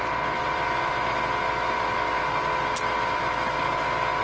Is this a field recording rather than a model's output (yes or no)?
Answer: yes